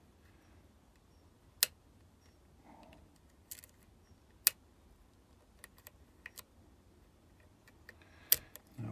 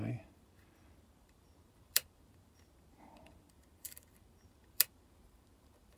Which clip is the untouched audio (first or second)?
first